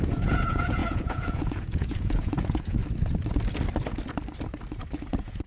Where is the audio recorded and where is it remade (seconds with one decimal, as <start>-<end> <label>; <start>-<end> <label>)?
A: 0.0-2.8 remade; 2.8-5.1 recorded; 5.1-5.5 remade